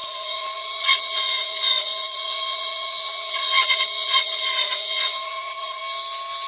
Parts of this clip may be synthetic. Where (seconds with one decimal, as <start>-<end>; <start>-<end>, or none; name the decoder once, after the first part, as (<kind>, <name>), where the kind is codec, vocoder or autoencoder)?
0.0-5.8 (vocoder, Vocos)